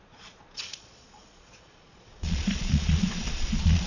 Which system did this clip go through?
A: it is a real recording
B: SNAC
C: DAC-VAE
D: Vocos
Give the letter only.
D